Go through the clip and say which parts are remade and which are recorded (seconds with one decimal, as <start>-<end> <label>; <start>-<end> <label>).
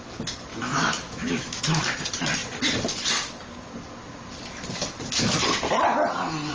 0.0-0.5 recorded; 0.5-1.8 remade; 1.8-6.5 recorded